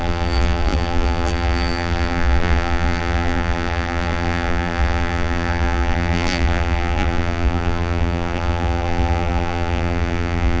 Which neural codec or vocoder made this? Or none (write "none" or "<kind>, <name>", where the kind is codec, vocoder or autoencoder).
vocoder, BigVGAN v2